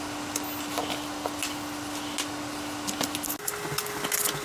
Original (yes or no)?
yes